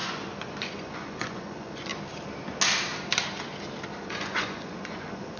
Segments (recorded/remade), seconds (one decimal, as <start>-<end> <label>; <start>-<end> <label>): 0.0-1.9 remade; 1.9-4.0 recorded; 4.0-5.4 remade